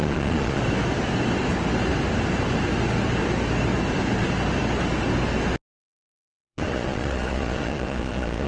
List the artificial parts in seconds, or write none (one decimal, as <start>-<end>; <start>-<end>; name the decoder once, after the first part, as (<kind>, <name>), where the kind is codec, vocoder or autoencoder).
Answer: 0.0-0.6 (vocoder, Vocos); 5.8-8.5